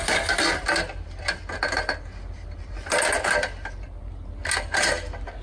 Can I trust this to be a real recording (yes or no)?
yes